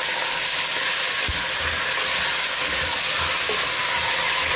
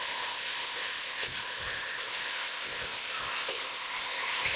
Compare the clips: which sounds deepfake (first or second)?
second